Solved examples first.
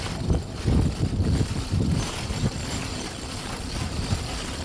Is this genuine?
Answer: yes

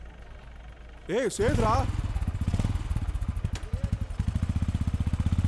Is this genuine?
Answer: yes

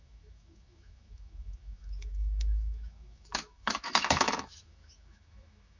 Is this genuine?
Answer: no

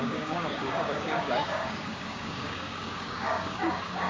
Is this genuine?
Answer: no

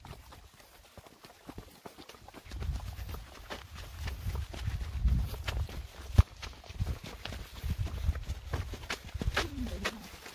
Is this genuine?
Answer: yes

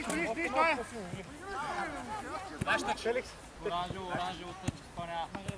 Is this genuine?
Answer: yes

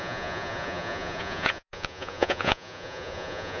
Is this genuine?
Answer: no